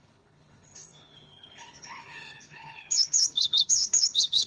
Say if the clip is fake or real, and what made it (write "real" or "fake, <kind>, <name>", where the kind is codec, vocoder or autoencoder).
fake, codec, HILCodec